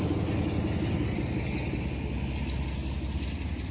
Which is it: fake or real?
real